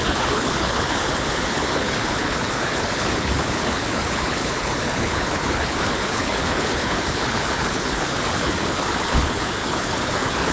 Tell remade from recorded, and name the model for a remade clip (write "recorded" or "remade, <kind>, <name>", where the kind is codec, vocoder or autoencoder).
remade, codec, HILCodec